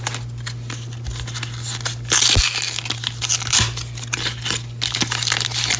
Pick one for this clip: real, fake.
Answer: real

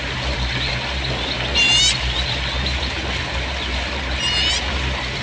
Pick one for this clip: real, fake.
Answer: real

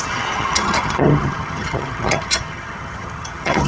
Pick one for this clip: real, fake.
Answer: fake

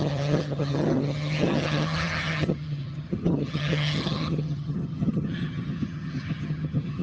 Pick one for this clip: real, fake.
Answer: fake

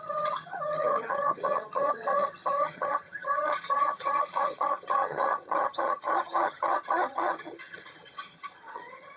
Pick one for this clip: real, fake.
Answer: fake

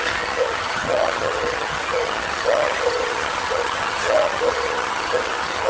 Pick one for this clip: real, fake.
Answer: fake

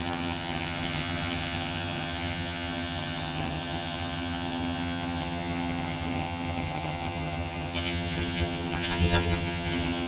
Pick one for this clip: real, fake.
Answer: fake